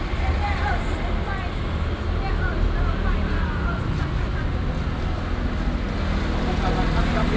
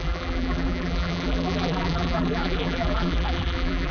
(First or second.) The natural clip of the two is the first